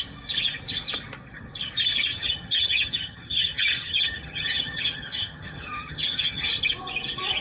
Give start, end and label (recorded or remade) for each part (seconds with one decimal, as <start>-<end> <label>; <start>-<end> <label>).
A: 0.0-2.1 recorded; 2.1-6.5 remade; 6.5-7.4 recorded